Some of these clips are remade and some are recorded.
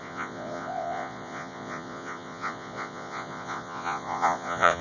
remade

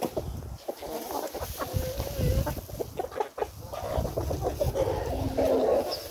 recorded